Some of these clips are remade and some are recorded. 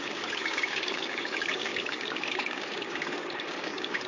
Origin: remade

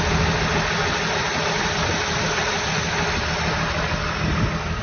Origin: recorded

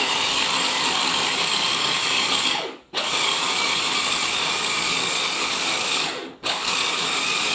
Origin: remade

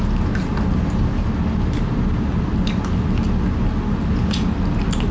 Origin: recorded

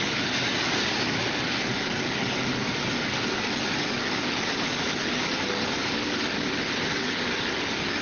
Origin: remade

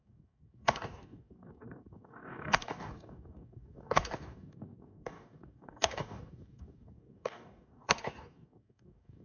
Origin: remade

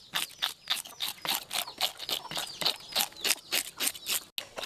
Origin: recorded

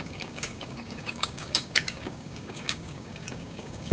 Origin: remade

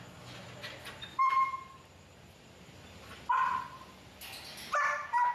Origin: recorded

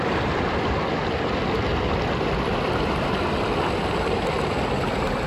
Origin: recorded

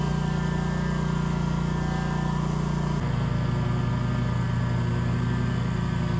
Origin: recorded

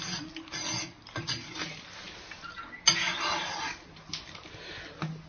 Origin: recorded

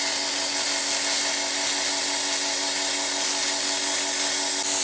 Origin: recorded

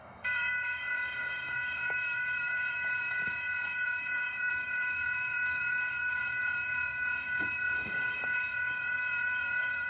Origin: remade